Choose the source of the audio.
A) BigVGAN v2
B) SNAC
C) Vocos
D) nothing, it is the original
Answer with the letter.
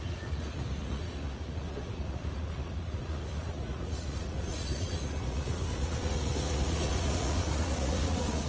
C